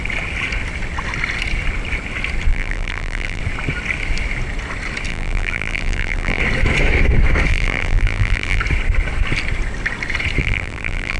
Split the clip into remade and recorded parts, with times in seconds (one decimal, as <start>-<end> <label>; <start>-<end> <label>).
0.0-2.5 recorded; 2.5-3.4 remade; 3.4-5.1 recorded; 5.1-6.4 remade; 6.4-7.5 recorded; 7.5-8.6 remade; 8.6-10.4 recorded; 10.4-11.2 remade